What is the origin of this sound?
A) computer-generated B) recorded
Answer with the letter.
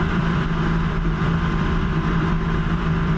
A